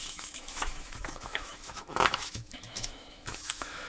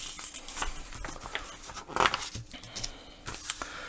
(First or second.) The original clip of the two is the second